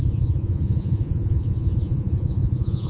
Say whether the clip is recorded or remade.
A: remade